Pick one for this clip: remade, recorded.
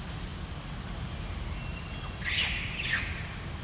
recorded